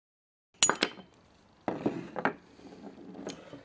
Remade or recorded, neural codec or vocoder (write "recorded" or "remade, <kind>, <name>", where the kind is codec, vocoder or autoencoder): recorded